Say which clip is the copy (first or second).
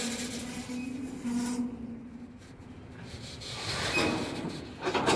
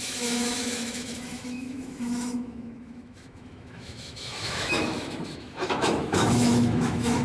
second